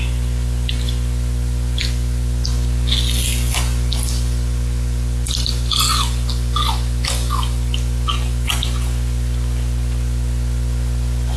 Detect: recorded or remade recorded